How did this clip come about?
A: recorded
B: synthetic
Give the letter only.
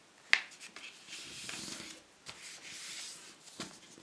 A